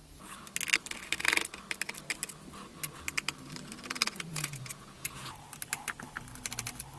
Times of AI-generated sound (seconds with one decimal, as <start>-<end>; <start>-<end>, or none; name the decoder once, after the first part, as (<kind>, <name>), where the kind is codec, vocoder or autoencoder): 4.3-5.2 (vocoder, Vocos)